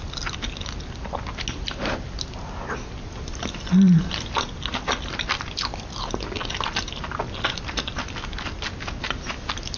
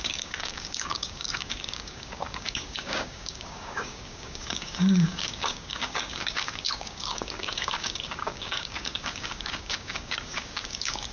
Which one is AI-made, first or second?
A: second